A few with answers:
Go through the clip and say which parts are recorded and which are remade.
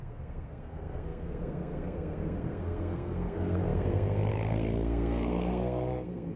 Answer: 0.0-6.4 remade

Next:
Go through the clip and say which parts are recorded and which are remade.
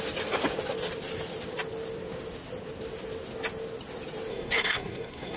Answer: 0.0-4.3 recorded; 4.3-5.4 remade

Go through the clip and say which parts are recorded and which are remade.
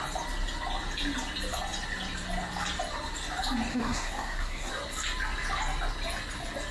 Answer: 0.0-3.7 recorded; 3.7-4.7 remade; 4.7-6.7 recorded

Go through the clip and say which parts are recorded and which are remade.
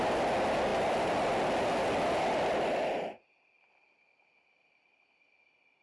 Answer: 0.0-5.8 recorded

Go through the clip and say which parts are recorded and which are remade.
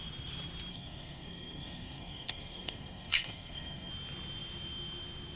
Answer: 0.0-0.7 recorded; 0.7-3.9 remade; 3.9-5.4 recorded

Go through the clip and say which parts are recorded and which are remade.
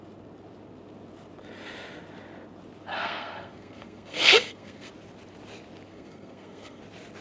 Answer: 0.0-2.9 recorded; 2.9-4.9 remade; 4.9-5.9 recorded; 5.9-6.8 remade; 6.8-7.2 recorded